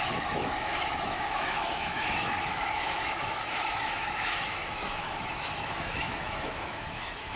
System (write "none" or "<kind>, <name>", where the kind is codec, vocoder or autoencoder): autoencoder, DAC-VAE